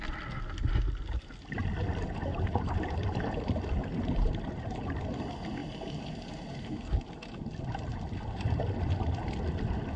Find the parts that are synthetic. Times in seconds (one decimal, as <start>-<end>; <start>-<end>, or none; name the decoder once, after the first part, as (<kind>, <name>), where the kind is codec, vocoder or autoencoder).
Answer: 2.3-5.1 (vocoder, BigVGAN v2); 5.6-7.0; 7.9-8.6